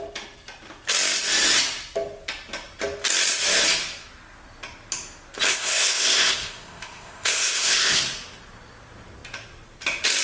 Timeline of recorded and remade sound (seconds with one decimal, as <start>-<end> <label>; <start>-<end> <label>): 0.0-5.5 recorded; 5.5-8.0 remade; 8.0-10.2 recorded